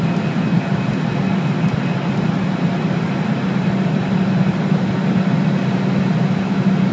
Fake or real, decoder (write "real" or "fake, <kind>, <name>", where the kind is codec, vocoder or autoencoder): real